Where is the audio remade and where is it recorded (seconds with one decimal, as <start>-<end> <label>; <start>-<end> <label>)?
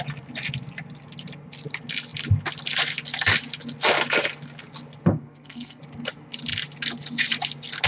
0.0-5.1 recorded; 5.1-5.8 remade; 5.8-7.9 recorded